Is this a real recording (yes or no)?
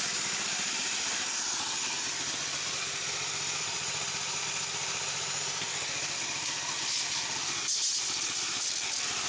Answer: yes